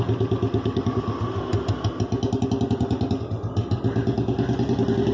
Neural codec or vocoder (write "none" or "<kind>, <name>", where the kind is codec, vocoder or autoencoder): none